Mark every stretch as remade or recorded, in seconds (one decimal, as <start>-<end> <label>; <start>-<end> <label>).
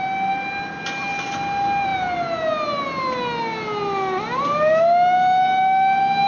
0.0-6.3 recorded